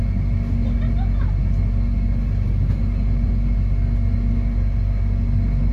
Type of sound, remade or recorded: recorded